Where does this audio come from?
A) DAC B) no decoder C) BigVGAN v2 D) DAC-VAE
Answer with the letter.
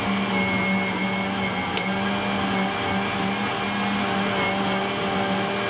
B